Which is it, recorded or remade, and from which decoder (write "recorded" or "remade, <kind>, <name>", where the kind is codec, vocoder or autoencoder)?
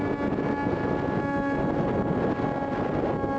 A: recorded